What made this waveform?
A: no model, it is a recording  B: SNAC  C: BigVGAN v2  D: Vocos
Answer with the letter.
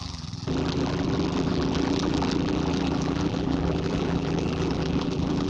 C